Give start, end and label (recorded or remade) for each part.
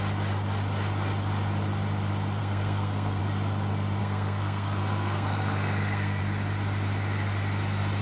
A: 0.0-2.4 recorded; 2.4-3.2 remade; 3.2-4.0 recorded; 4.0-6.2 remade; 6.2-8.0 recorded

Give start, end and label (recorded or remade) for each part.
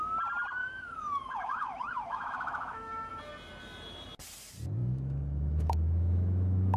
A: 0.0-0.6 recorded; 0.6-3.1 remade; 3.1-4.8 recorded; 4.8-6.8 remade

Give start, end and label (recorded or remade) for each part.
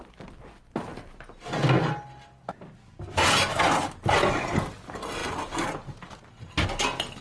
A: 0.0-7.2 recorded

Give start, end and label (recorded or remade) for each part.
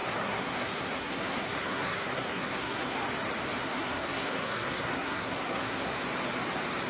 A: 0.0-3.0 remade; 3.0-3.6 recorded; 3.6-5.9 remade; 5.9-6.9 recorded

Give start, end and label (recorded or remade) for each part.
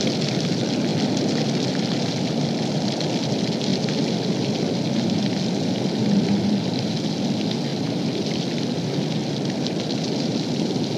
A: 0.0-11.0 recorded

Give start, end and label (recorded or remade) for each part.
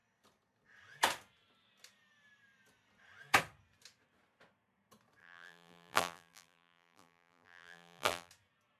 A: 0.0-5.2 recorded; 5.2-8.3 remade; 8.3-8.8 recorded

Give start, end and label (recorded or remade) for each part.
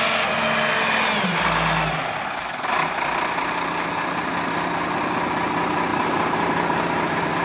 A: 0.0-5.9 recorded; 5.9-6.5 remade; 6.5-7.4 recorded